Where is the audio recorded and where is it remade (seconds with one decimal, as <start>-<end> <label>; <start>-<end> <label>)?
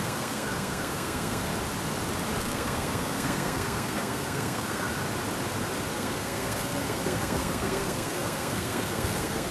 0.0-1.5 remade; 1.5-2.4 recorded; 2.4-4.9 remade; 4.9-5.9 recorded; 5.9-9.5 remade